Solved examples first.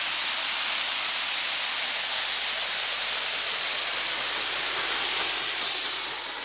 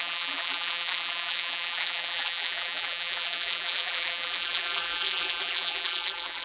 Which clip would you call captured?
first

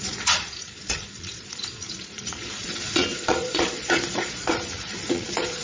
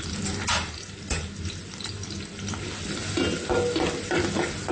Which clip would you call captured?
second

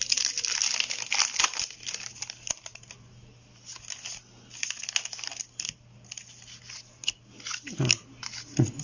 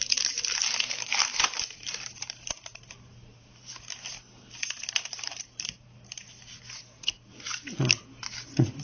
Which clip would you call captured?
first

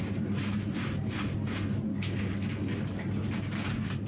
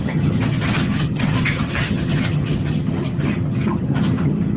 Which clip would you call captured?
first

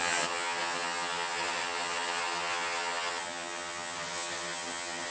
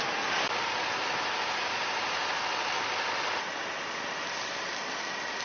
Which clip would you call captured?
second